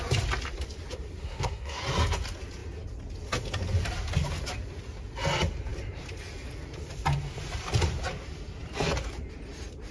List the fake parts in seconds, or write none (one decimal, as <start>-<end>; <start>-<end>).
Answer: 1.2-1.8